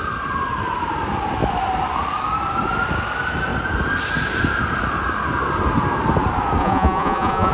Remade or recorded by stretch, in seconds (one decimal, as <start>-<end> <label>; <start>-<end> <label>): 0.0-6.6 recorded; 6.6-7.5 remade